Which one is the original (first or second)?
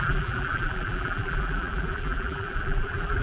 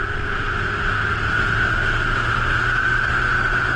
second